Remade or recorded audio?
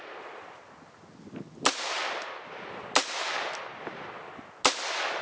recorded